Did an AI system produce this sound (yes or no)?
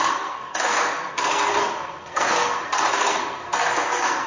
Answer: yes